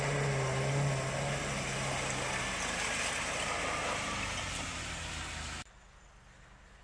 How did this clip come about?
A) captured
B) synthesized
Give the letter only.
A